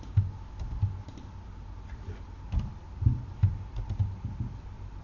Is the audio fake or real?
real